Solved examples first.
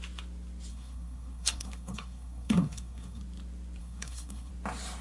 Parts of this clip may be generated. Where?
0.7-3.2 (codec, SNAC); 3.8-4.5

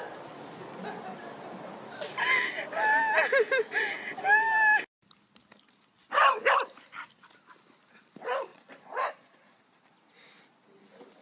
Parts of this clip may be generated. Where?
8.5-9.6 (vocoder, Vocos)

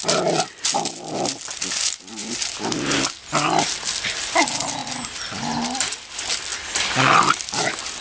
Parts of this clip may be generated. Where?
none

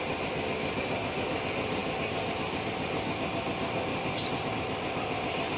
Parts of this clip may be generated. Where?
3.9-4.5 (vocoder, BigVGAN v2)